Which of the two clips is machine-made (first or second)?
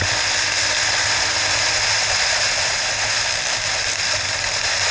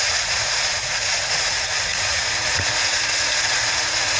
second